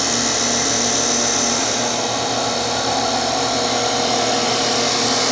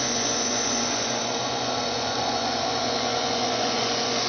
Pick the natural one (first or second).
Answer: first